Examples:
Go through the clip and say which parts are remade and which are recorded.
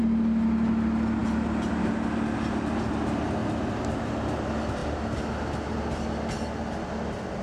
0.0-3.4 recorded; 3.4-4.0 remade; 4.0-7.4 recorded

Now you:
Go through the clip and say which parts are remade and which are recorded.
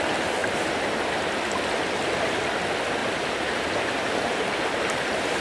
0.0-0.4 recorded; 0.4-1.3 remade; 1.3-3.0 recorded; 3.0-5.4 remade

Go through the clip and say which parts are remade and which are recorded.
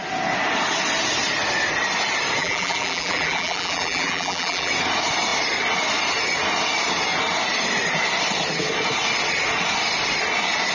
0.0-2.4 recorded; 2.4-4.7 remade; 4.7-10.7 recorded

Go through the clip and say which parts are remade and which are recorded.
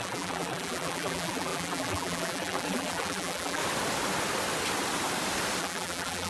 0.0-3.6 remade; 3.6-5.6 recorded; 5.6-6.3 remade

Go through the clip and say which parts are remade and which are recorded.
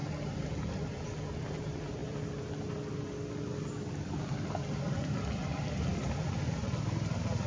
0.0-7.5 recorded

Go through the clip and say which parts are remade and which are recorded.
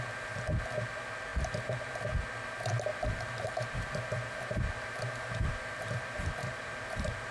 0.0-1.3 recorded; 1.3-1.9 remade; 1.9-2.9 recorded; 2.9-7.3 remade